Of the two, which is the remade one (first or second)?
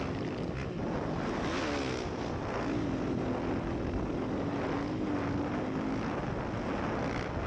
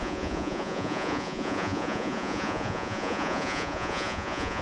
second